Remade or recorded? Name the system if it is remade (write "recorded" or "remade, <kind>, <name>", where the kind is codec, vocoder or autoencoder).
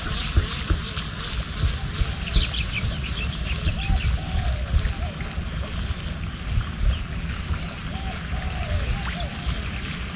recorded